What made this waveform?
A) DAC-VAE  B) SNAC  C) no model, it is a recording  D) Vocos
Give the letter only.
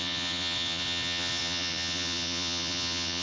D